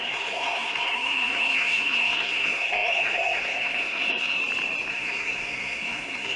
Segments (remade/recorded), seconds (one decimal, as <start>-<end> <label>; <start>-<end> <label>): 0.0-4.4 remade; 4.4-4.9 recorded; 4.9-6.4 remade